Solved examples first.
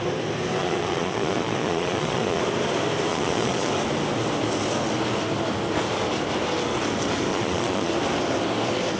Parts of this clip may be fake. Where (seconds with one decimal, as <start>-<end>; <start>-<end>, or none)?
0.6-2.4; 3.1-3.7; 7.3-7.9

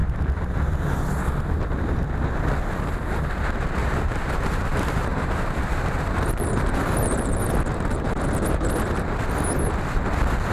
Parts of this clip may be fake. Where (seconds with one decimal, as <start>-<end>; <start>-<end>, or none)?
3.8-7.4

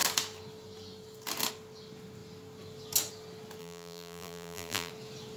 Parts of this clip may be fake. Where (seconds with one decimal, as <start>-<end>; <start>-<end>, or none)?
3.6-4.9